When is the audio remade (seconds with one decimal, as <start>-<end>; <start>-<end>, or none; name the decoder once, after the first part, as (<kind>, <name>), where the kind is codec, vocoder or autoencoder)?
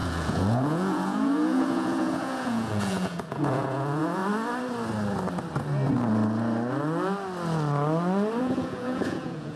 0.0-4.2 (vocoder, Vocos); 8.4-9.6